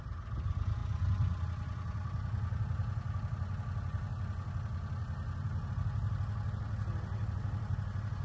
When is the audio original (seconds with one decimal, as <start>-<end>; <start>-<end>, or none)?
0.0-8.2